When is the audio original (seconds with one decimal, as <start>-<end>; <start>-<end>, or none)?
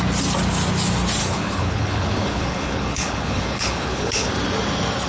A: 0.0-1.2; 4.3-5.1